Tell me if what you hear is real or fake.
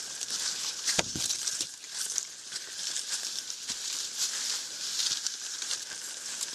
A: real